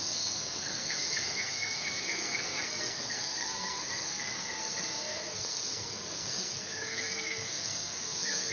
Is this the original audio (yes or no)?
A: no